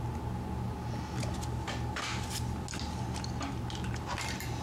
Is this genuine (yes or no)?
yes